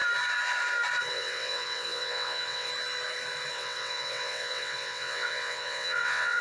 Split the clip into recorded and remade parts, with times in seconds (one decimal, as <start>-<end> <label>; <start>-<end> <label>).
0.0-1.1 recorded; 1.1-2.7 remade; 2.7-3.5 recorded; 3.5-6.4 remade